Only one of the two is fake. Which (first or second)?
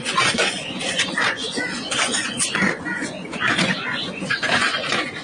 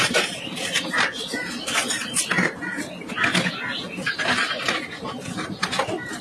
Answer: first